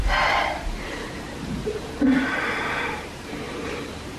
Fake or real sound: fake